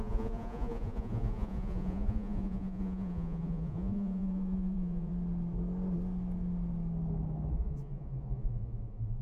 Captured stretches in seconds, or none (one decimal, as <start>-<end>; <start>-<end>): 5.1-7.5